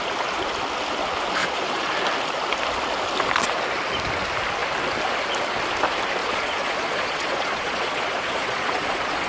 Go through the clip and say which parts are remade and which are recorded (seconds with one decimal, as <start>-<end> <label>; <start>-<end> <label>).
0.0-1.4 recorded; 1.4-1.9 remade; 1.9-6.2 recorded; 6.2-9.3 remade

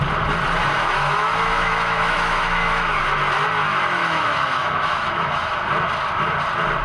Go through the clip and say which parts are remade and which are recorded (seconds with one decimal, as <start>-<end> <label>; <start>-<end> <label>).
0.0-0.8 recorded; 0.8-3.0 remade; 3.0-4.0 recorded; 4.0-5.6 remade; 5.6-6.8 recorded

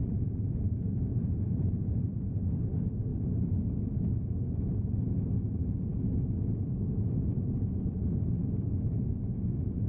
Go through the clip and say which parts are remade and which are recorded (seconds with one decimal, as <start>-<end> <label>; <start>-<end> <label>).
0.0-2.1 remade; 2.1-9.9 recorded

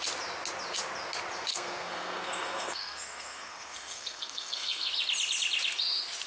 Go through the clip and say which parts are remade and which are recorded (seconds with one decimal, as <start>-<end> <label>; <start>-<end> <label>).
0.0-1.5 recorded; 1.5-4.9 remade; 4.9-6.3 recorded

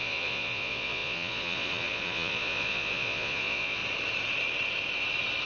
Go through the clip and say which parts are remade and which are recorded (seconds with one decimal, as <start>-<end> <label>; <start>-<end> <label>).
0.0-3.8 remade; 3.8-5.5 recorded

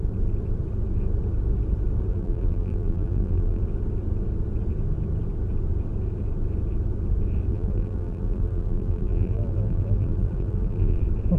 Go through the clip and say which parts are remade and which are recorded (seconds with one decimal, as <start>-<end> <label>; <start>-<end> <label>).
0.0-2.1 recorded; 2.1-3.6 remade; 3.6-7.5 recorded; 7.5-11.0 remade; 11.0-11.4 recorded